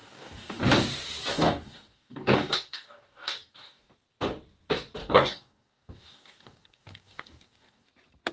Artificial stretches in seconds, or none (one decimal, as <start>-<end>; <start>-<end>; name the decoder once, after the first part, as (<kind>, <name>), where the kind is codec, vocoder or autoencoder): 0.0-0.6 (codec, DAC); 1.3-3.9; 5.0-7.9